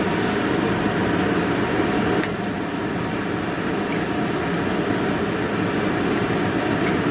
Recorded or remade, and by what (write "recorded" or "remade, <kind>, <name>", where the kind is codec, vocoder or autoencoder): recorded